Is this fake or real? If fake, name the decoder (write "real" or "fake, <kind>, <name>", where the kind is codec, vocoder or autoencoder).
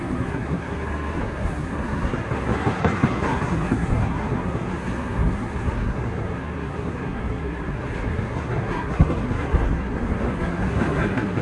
fake, codec, SNAC